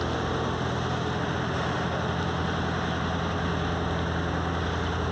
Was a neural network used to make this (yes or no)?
no